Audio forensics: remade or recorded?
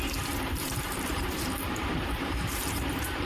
remade